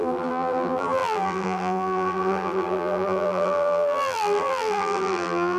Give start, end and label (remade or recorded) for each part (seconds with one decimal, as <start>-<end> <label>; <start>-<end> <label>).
0.0-5.6 remade